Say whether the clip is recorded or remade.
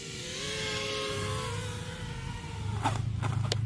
recorded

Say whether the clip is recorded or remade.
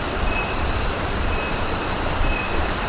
remade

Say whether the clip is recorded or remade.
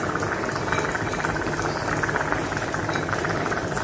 recorded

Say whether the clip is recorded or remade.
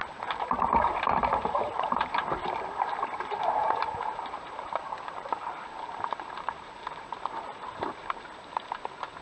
remade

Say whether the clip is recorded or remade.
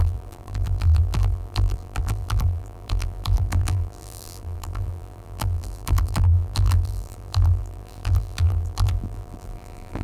remade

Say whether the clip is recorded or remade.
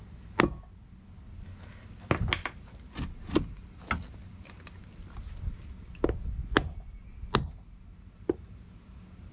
recorded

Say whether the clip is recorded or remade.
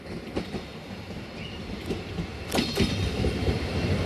recorded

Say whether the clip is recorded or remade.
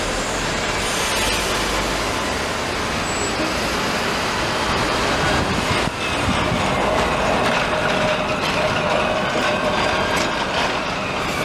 recorded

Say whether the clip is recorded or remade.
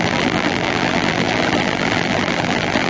remade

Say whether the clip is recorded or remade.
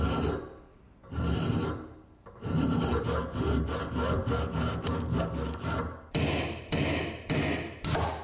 recorded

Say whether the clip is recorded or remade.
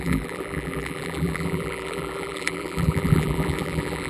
remade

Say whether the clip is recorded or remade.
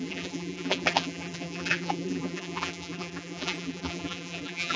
remade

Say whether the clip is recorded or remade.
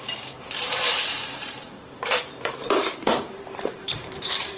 remade